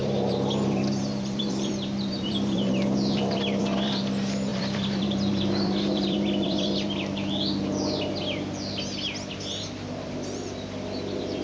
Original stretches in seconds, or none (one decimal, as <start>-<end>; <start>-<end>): 4.0-4.5; 7.1-11.4